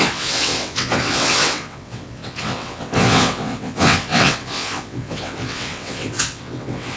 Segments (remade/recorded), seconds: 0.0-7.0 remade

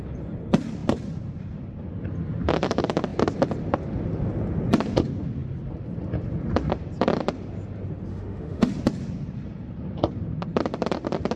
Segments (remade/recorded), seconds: 0.0-8.1 recorded; 8.1-8.7 remade; 8.7-11.4 recorded

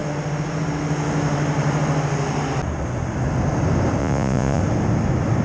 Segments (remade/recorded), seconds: 0.0-4.0 recorded; 4.0-4.6 remade; 4.6-5.4 recorded

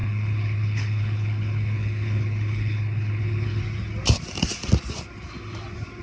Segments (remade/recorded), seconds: 0.0-3.6 remade; 3.6-6.0 recorded